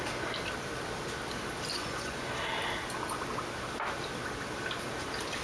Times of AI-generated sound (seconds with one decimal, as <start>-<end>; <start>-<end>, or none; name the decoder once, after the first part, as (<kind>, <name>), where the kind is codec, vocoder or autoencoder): 1.7-2.3 (vocoder, Vocos)